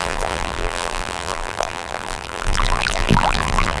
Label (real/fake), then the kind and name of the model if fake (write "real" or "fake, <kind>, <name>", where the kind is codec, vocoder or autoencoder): fake, vocoder, BigVGAN v2